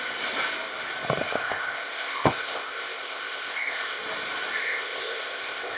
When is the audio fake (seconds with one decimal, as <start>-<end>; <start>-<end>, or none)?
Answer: 1.2-4.0; 4.6-5.8